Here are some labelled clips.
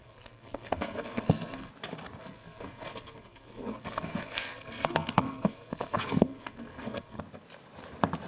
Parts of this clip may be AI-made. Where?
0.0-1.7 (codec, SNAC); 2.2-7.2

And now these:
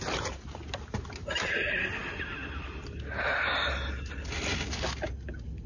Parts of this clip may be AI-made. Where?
none